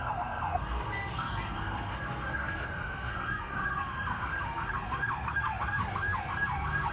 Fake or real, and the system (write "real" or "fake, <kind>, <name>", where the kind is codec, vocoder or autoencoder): fake, codec, SNAC